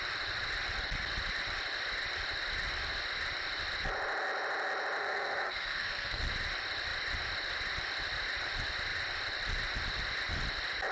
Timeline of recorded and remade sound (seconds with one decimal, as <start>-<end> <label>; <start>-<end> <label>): 0.0-5.0 recorded; 5.0-6.2 remade; 6.2-10.9 recorded